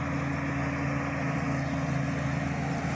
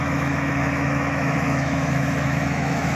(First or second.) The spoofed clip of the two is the second